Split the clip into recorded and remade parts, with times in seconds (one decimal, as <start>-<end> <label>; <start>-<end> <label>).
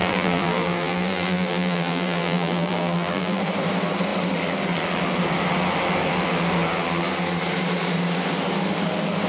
0.0-3.4 remade; 3.4-9.3 recorded